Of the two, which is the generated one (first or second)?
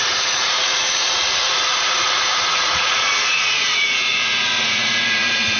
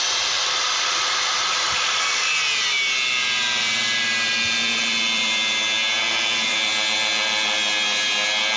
first